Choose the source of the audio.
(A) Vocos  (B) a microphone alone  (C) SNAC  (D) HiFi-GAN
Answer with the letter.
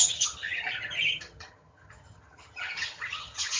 D